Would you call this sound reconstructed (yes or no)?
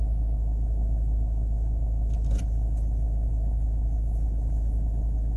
no